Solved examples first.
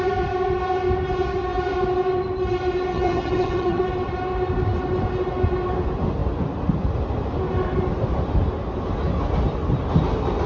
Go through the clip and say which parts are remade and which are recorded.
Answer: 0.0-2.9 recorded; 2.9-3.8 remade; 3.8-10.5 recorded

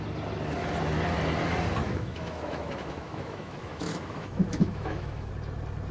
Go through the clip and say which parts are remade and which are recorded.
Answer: 0.0-1.8 recorded; 1.8-5.3 remade; 5.3-5.9 recorded